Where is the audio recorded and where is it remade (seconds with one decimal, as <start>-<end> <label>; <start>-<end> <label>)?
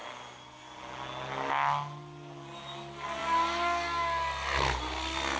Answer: 0.0-5.4 recorded